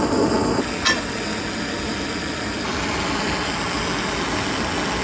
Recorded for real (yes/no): yes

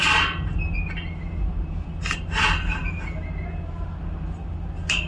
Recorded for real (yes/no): yes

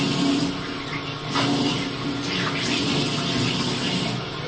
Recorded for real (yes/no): yes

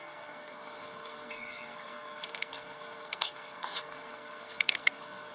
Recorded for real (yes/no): no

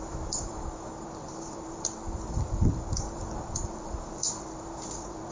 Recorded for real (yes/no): no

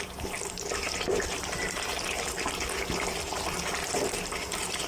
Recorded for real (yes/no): yes